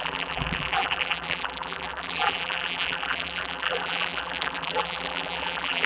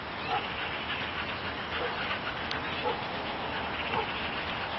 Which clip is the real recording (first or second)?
second